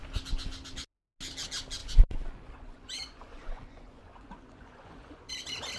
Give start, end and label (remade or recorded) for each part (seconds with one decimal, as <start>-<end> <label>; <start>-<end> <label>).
0.0-1.8 recorded; 1.8-5.3 remade; 5.3-5.8 recorded